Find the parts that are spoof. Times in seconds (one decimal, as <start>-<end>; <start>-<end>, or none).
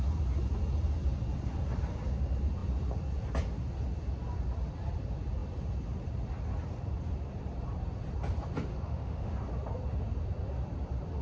8.7-9.3